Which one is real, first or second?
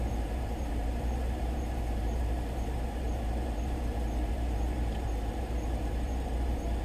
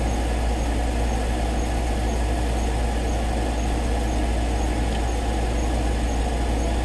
second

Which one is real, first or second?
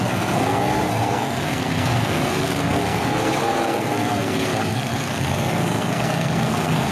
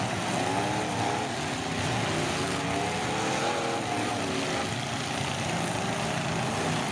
second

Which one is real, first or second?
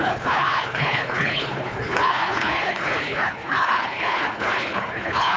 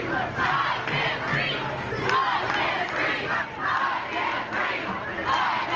second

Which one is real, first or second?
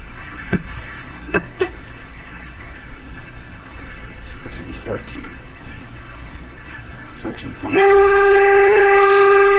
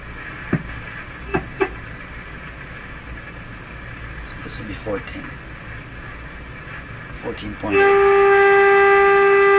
second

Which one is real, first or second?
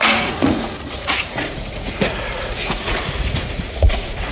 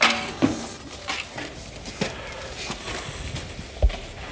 second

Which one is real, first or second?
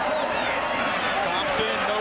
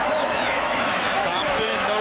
first